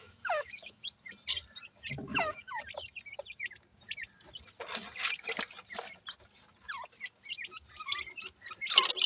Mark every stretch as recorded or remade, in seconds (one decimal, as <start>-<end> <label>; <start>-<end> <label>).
0.0-0.8 remade; 0.8-2.1 recorded; 2.1-2.6 remade; 2.6-9.1 recorded